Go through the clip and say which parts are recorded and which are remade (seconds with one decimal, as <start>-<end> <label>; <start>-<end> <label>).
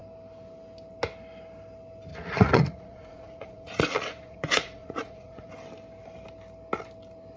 0.0-2.1 recorded; 2.1-5.5 remade; 5.5-7.4 recorded